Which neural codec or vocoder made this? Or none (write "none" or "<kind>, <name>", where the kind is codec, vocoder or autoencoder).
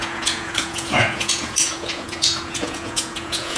vocoder, Vocos